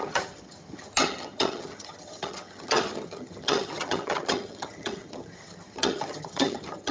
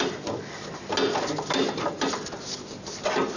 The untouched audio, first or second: second